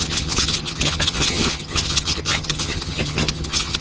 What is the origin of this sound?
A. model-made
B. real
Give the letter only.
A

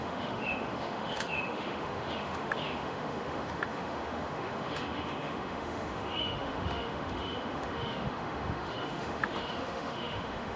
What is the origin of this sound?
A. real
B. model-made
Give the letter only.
B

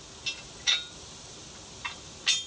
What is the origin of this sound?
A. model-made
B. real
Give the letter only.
B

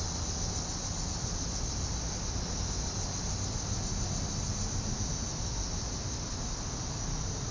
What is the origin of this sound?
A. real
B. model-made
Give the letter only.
A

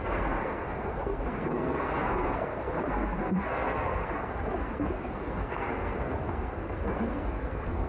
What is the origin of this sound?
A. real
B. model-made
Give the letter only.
B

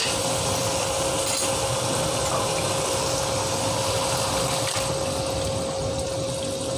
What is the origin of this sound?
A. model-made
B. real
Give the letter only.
B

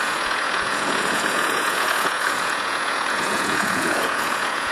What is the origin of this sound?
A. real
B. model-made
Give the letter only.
B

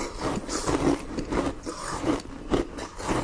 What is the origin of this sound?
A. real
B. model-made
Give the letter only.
A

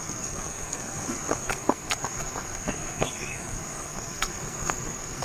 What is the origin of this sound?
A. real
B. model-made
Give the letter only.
B